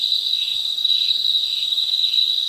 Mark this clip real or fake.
fake